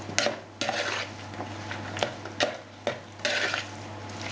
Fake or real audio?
real